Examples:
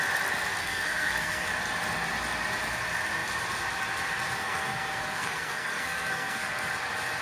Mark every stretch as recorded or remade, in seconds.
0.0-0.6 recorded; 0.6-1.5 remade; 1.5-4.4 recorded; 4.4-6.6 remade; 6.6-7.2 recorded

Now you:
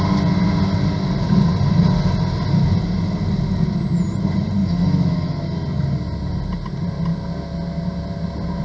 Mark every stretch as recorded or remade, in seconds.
0.0-4.6 recorded; 4.6-5.4 remade; 5.4-8.6 recorded